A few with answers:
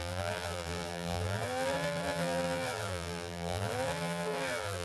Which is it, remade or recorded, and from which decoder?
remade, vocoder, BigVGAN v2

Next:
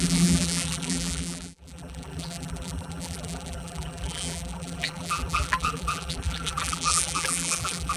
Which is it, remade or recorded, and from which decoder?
remade, vocoder, BigVGAN v2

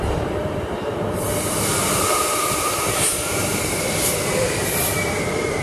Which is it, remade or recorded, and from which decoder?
remade, vocoder, BigVGAN v2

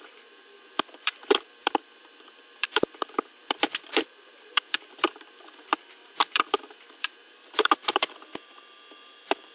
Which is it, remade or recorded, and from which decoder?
remade, vocoder, BigVGAN v2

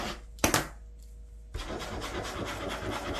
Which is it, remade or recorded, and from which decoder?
recorded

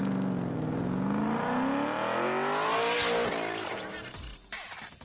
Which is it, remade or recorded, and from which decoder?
recorded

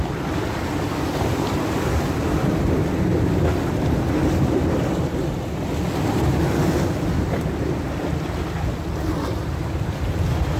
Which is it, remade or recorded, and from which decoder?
recorded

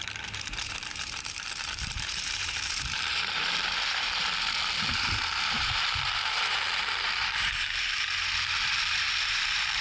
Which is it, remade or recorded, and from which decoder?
remade, vocoder, BigVGAN v2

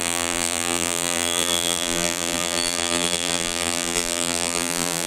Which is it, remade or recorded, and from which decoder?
remade, vocoder, BigVGAN v2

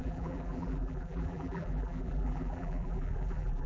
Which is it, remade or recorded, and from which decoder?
remade, vocoder, BigVGAN v2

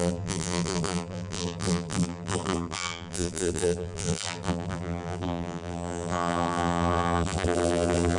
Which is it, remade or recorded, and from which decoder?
remade, vocoder, BigVGAN v2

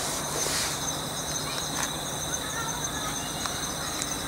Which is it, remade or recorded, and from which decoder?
remade, vocoder, BigVGAN v2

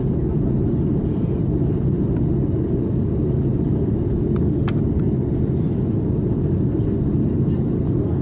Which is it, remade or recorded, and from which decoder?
recorded